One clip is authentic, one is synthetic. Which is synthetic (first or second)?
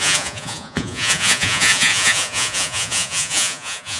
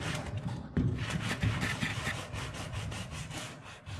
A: first